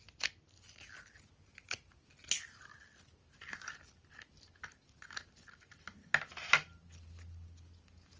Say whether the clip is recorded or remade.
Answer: recorded